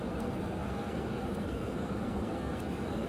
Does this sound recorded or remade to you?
remade